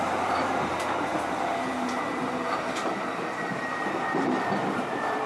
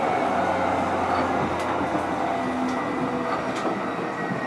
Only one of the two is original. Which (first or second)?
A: second